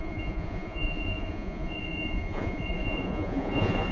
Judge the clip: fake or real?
fake